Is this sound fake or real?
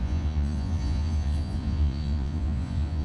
fake